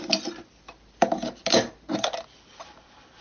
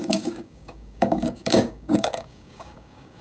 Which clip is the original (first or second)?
first